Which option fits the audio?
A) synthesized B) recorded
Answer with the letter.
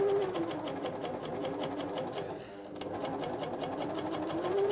B